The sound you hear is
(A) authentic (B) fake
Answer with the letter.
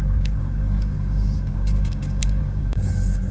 B